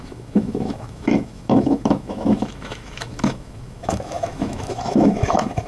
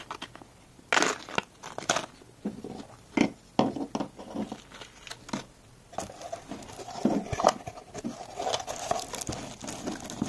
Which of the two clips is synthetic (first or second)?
first